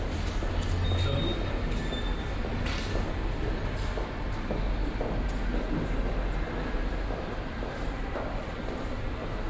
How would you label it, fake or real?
real